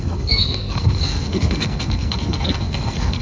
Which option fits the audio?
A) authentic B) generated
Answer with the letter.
B